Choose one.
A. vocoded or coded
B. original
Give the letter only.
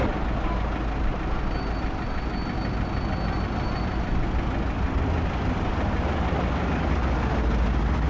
B